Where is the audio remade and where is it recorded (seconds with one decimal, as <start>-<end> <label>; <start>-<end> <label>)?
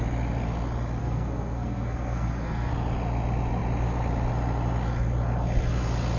0.0-1.0 recorded; 1.0-2.7 remade; 2.7-6.2 recorded